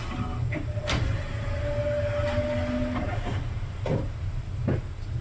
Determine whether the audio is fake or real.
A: real